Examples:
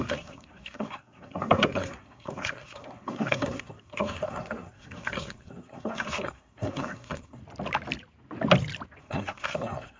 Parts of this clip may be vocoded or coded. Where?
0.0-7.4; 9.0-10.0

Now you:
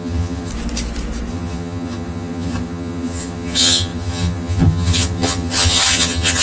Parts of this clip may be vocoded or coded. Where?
0.0-0.5; 1.3-6.4

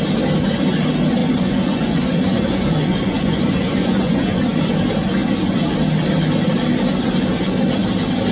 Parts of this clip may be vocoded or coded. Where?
1.2-4.4

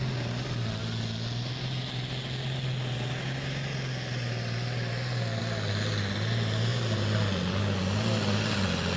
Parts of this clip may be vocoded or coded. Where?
none